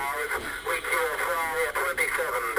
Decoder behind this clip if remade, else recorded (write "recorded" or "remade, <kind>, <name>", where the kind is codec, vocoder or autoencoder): recorded